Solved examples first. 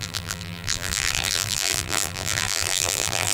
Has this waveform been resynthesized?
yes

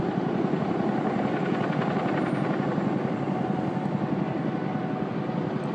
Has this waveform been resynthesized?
no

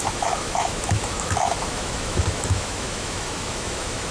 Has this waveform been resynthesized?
yes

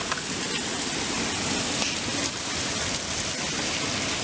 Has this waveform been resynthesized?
no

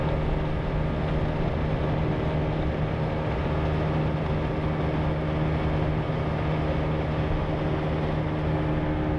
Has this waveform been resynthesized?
no